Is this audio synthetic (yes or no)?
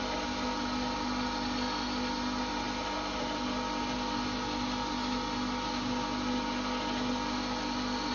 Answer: no